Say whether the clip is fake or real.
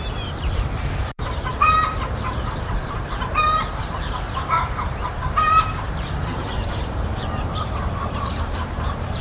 fake